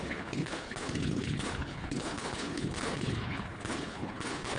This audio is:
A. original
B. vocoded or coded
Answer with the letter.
B